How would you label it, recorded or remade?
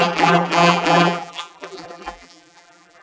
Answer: remade